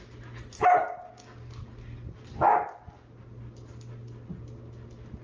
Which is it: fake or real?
real